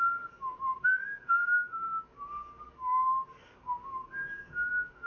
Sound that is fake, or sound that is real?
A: fake